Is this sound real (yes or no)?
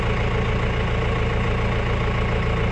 yes